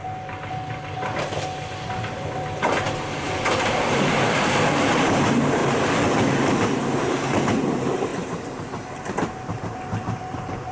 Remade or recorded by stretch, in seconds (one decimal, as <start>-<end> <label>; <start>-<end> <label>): 0.0-2.6 recorded; 2.6-5.6 remade; 5.6-7.0 recorded; 7.0-10.7 remade